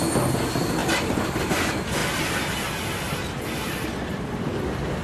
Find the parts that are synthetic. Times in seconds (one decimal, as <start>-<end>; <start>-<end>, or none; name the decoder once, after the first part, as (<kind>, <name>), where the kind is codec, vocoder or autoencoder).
0.8-1.3 (vocoder, BigVGAN v2)